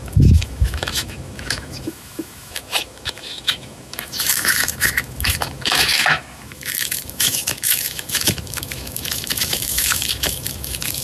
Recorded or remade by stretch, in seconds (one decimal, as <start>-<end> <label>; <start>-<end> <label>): 0.0-11.0 remade